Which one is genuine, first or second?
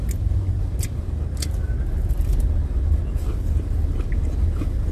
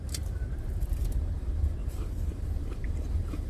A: first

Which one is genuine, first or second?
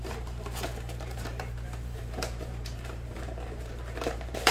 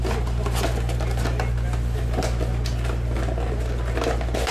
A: second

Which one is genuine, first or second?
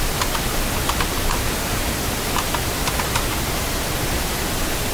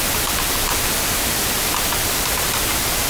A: first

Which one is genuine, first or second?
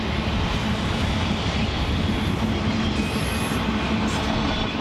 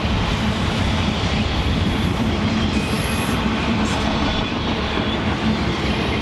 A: first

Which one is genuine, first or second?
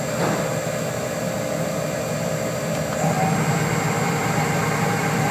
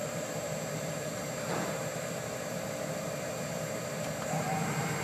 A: first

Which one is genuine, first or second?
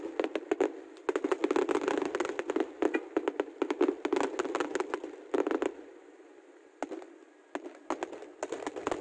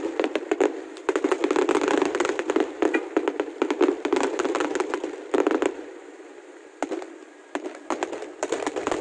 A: first